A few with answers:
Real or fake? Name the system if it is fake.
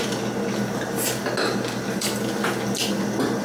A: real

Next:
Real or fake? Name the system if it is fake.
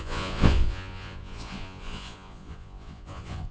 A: fake, vocoder, Vocos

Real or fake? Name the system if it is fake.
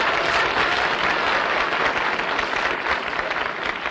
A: real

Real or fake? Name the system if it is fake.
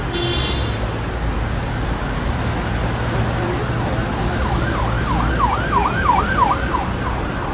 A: real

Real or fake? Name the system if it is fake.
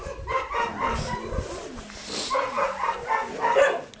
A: real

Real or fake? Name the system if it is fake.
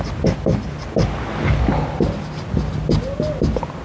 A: real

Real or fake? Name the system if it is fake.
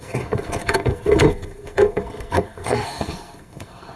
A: fake, codec, SNAC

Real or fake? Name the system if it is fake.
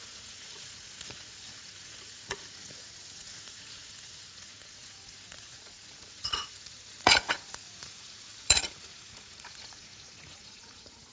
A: fake, vocoder, Vocos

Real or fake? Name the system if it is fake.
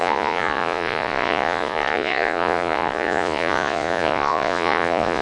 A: fake, vocoder, Vocos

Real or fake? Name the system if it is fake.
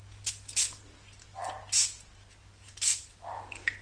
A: real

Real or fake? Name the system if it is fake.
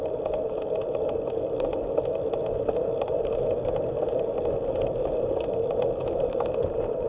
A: real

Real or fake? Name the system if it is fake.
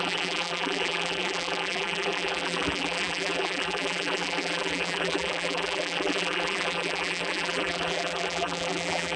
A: fake, vocoder, BigVGAN v2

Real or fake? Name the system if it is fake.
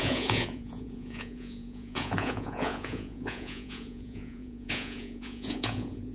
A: fake, vocoder, Vocos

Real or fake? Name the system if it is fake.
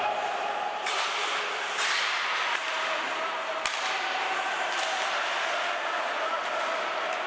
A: real